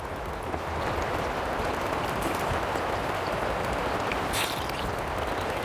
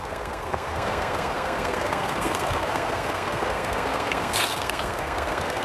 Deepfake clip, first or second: second